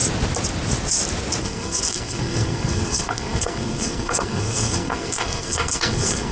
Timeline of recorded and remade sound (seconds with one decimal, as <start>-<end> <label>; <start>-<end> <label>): 0.0-1.4 recorded; 1.4-6.3 remade